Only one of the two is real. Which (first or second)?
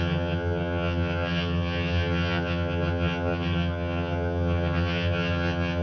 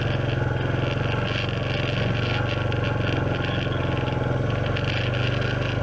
second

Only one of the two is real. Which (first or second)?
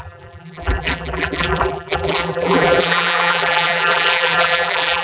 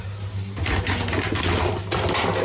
second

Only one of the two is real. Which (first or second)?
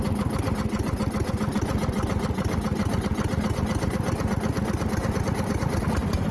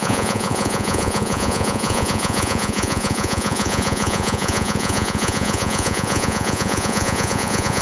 first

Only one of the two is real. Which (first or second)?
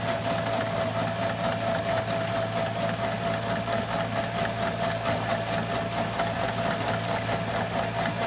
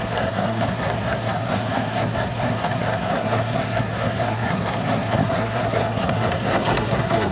first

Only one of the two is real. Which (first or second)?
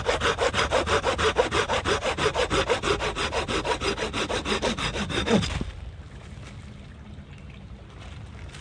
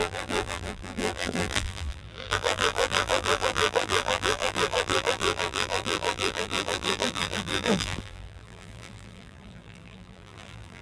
first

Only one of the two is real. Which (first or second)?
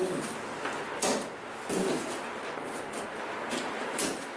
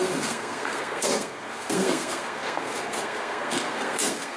first